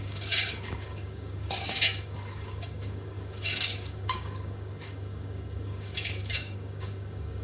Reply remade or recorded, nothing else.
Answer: remade